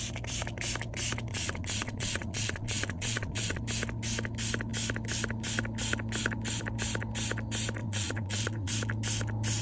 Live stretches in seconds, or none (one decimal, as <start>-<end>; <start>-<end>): 0.0-1.3; 3.6-7.8; 8.7-9.6